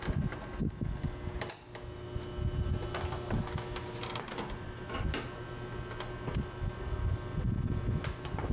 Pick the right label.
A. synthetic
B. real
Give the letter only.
B